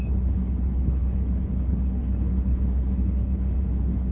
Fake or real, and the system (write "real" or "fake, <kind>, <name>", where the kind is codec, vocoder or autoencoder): fake, codec, HILCodec